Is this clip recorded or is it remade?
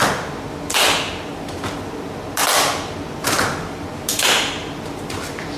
recorded